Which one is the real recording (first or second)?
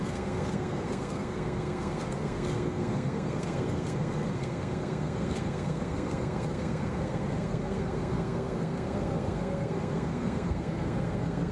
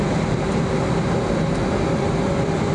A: second